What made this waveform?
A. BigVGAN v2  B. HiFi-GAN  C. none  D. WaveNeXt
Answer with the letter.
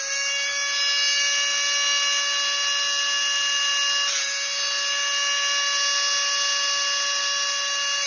C